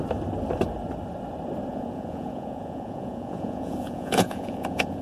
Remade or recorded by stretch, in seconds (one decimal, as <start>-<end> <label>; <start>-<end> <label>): 0.0-1.7 recorded; 1.7-5.0 remade